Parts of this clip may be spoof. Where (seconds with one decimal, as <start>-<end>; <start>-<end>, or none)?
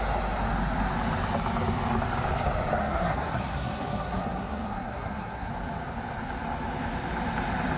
2.8-5.5